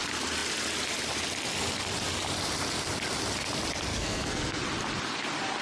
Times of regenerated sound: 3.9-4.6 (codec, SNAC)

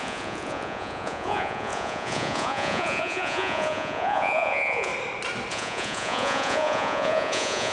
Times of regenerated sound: 0.0-4.9 (vocoder, Vocos); 5.5-7.7

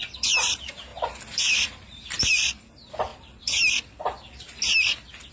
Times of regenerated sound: 3.1-5.3 (vocoder, BigVGAN v2)

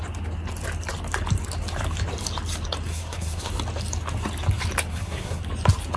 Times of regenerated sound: 2.9-3.5 (codec, SNAC); 4.9-5.4